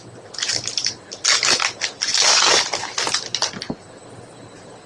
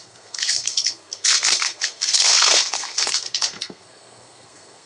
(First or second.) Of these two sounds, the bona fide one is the first